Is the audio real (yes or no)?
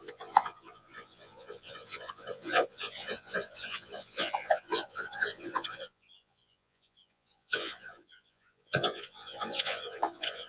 no